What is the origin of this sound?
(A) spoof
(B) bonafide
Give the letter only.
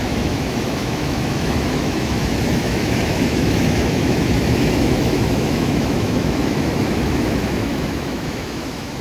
A